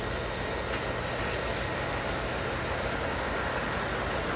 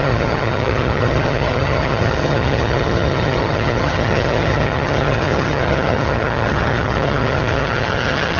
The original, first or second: first